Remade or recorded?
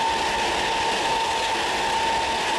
recorded